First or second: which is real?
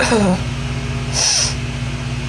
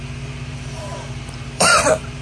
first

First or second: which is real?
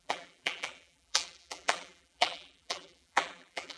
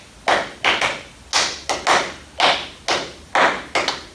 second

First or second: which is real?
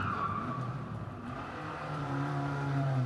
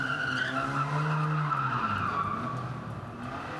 second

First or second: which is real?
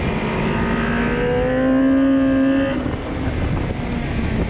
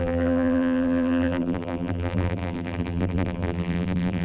first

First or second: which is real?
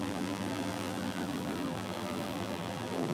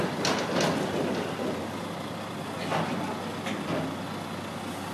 second